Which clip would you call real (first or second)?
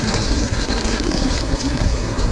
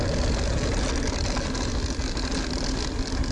second